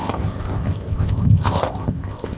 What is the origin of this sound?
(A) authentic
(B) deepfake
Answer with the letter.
B